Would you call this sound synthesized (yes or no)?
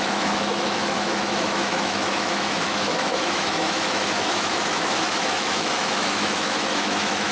yes